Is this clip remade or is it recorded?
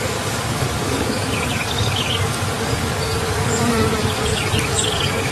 remade